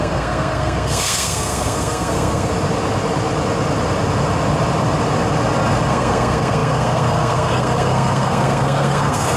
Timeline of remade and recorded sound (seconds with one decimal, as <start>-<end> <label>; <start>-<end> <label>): 0.0-2.5 remade; 2.5-5.9 recorded; 5.9-9.4 remade